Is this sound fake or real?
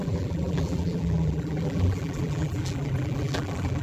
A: fake